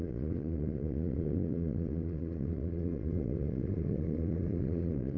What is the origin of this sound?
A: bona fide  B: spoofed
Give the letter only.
B